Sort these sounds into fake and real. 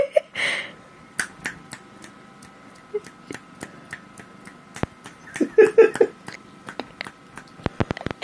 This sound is real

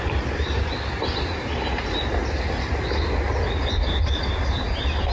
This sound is real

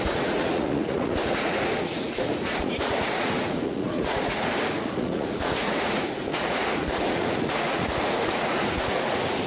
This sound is fake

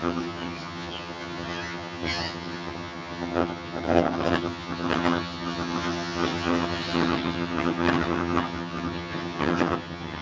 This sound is fake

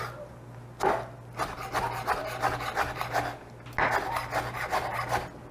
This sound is real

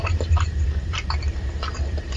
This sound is fake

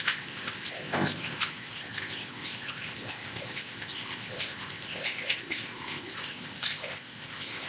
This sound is fake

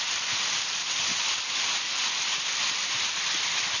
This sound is real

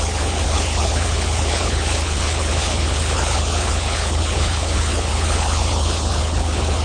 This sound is fake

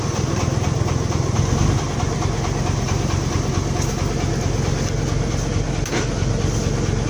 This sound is real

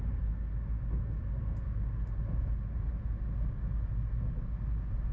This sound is real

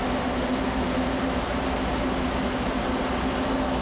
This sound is real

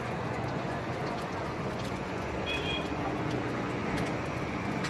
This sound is fake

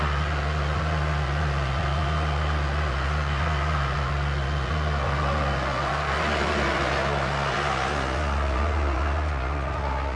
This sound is fake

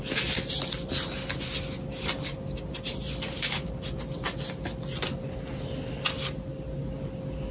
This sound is real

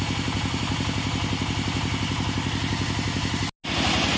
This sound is real